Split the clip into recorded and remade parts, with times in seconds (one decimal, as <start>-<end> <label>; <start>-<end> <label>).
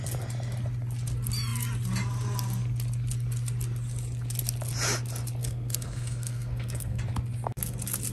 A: 0.0-5.4 recorded; 5.4-7.0 remade; 7.0-8.1 recorded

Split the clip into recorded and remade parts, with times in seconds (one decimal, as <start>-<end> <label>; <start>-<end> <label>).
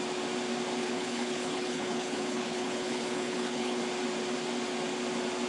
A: 0.0-0.8 recorded; 0.8-3.8 remade; 3.8-5.5 recorded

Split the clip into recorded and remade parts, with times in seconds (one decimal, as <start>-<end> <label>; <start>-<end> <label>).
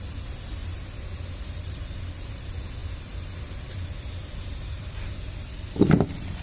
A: 0.0-0.6 remade; 0.6-1.3 recorded; 1.3-6.4 remade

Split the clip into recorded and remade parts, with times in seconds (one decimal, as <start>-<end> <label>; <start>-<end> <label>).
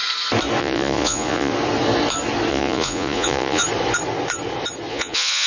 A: 0.0-0.6 recorded; 0.6-1.5 remade; 1.5-2.5 recorded; 2.5-3.6 remade; 3.6-4.9 recorded; 4.9-5.5 remade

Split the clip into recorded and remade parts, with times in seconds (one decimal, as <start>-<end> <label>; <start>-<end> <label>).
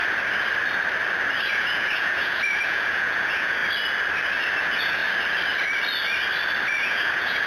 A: 0.0-1.5 recorded; 1.5-3.6 remade; 3.6-4.6 recorded; 4.6-5.0 remade; 5.0-6.8 recorded; 6.8-7.5 remade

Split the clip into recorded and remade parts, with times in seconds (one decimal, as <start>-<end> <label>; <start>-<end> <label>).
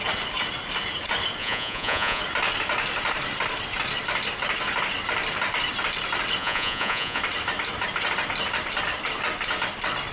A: 0.0-1.4 recorded; 1.4-2.2 remade; 2.2-6.4 recorded; 6.4-7.2 remade; 7.2-10.1 recorded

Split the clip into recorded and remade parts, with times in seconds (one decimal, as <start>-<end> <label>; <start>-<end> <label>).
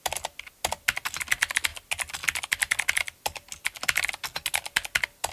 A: 0.0-5.3 recorded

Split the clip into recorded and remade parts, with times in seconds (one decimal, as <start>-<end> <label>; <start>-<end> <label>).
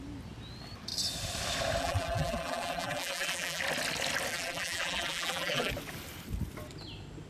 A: 0.0-1.8 recorded; 1.8-3.6 remade; 3.6-4.3 recorded; 4.3-5.7 remade; 5.7-7.3 recorded